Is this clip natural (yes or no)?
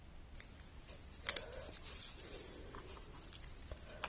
yes